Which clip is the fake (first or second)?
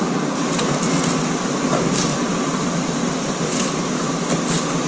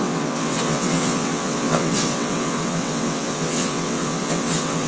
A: second